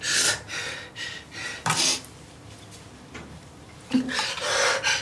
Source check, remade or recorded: recorded